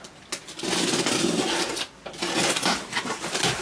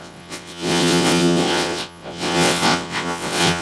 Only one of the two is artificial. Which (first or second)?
second